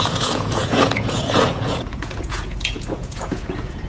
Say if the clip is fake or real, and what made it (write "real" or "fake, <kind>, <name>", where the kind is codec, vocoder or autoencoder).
fake, vocoder, Vocos